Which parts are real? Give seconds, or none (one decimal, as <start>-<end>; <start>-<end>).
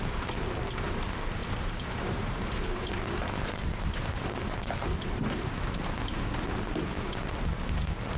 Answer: 0.0-1.4; 6.2-8.2